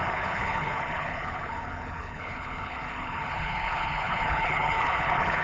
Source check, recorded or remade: remade